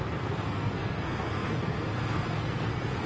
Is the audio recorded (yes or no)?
no